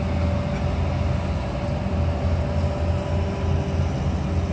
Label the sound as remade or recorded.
recorded